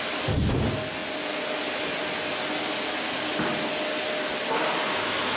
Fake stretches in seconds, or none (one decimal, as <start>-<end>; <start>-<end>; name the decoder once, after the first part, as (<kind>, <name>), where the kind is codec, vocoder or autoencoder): none